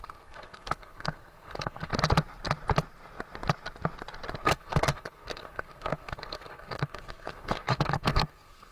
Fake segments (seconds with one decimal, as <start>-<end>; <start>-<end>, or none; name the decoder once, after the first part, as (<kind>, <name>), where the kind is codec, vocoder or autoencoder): 0.0-1.9 (codec, SNAC); 4.4-8.7